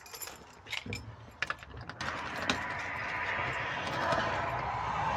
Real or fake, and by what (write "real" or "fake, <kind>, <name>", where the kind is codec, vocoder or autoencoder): real